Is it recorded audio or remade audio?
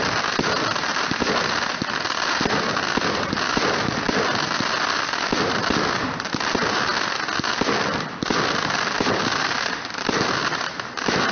recorded